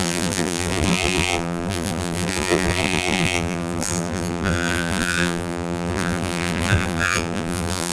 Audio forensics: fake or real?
fake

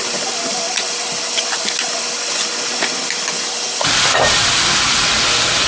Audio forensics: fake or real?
real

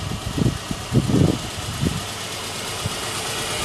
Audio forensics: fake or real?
real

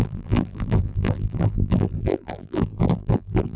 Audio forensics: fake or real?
fake